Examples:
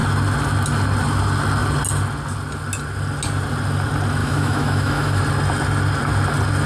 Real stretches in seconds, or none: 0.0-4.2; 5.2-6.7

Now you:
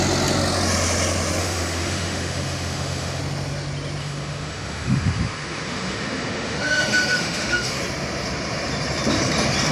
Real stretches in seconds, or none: 0.0-1.4; 3.2-4.0; 7.8-9.7

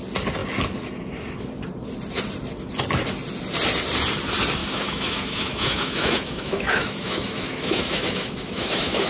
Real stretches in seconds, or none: 0.0-4.6

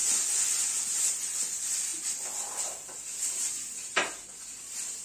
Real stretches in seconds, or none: 0.0-5.0

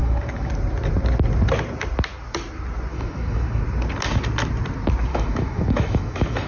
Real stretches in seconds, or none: 0.5-2.9; 3.6-5.1